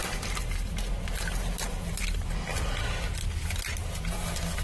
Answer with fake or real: real